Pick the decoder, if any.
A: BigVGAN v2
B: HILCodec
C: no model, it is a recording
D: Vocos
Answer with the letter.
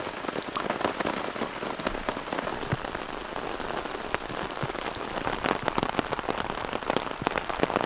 C